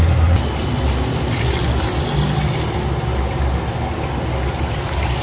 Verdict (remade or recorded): recorded